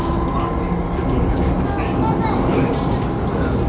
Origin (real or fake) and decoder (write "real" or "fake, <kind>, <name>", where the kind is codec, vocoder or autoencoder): real